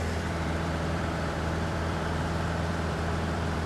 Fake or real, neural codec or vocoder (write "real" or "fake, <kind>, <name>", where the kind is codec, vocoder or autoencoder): fake, vocoder, BigVGAN v2